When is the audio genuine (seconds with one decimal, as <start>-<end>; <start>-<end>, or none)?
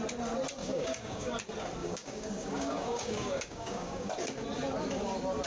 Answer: 0.0-0.6; 1.3-1.8; 4.1-5.5